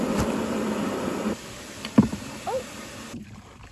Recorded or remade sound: recorded